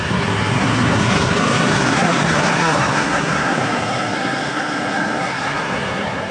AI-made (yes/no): yes